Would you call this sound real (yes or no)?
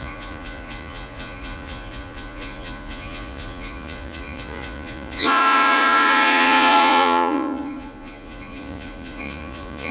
no